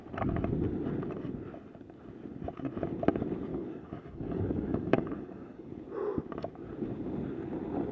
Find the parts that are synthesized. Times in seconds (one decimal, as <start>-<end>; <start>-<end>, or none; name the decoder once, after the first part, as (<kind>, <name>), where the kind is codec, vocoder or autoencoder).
3.5-5.7 (codec, DAC)